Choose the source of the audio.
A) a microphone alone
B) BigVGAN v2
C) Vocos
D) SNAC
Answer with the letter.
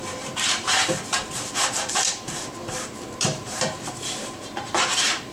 B